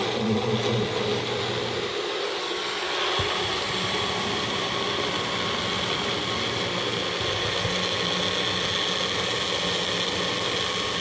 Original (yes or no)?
yes